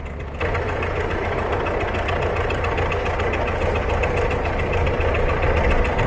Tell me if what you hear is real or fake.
real